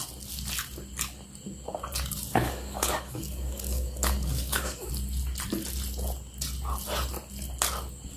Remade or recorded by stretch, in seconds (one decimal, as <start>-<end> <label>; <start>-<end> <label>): 0.0-2.3 recorded; 2.3-4.9 remade; 4.9-8.2 recorded